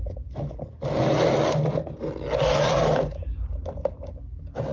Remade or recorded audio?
recorded